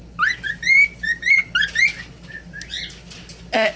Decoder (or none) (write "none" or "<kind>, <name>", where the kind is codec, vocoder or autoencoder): none